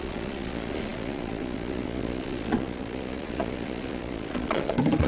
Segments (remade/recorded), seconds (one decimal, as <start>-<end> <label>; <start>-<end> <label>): 0.0-5.1 remade